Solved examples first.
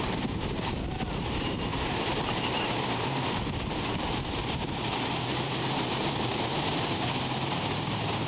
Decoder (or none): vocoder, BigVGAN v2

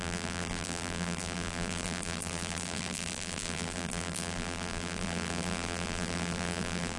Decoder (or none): vocoder, BigVGAN v2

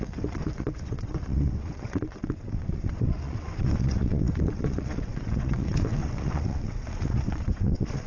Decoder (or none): vocoder, WaveNeXt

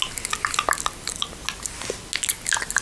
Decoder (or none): none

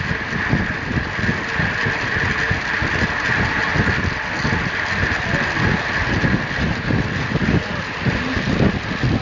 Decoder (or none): none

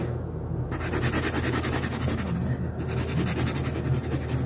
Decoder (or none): none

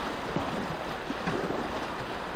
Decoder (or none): none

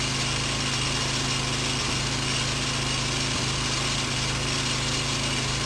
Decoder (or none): none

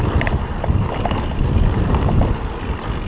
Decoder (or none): none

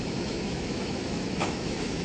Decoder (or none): autoencoder, DAC-VAE